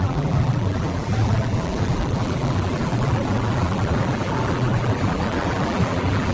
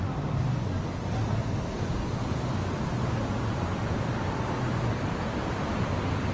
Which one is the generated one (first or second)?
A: first